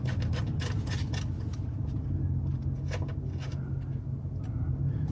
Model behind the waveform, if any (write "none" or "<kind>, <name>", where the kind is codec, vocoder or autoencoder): none